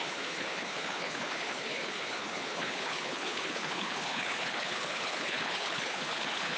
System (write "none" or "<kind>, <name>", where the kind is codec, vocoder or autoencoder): codec, HILCodec